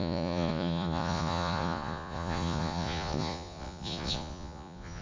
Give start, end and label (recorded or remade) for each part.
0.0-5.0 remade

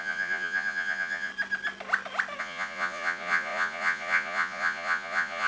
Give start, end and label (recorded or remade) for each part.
0.0-1.3 remade; 1.3-2.4 recorded; 2.4-5.5 remade

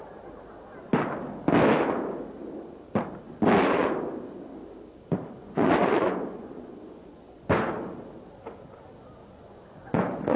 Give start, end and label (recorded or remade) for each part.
0.0-5.4 recorded; 5.4-7.5 remade; 7.5-9.2 recorded; 9.2-10.4 remade

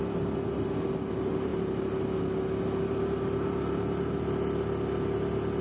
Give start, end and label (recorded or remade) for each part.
0.0-5.6 recorded